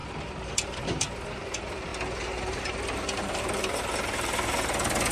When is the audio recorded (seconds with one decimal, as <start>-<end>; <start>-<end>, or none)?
0.0-5.1